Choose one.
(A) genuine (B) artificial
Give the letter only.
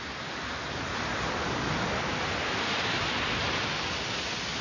A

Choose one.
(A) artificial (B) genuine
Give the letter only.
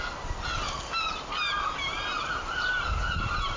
B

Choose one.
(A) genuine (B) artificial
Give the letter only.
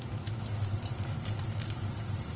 A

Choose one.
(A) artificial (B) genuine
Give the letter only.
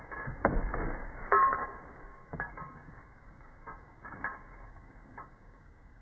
A